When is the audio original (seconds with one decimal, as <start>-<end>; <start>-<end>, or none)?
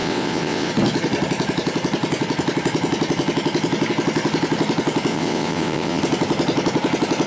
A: 0.7-5.1; 6.0-7.3